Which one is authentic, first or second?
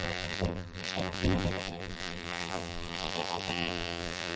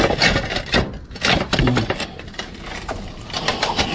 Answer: second